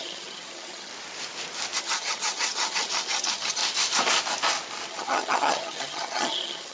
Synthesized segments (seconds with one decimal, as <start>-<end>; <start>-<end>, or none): 0.0-0.9; 1.8-3.6; 4.9-6.7